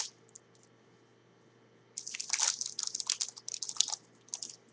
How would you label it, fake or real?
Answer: real